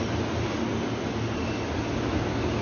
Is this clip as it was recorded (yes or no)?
yes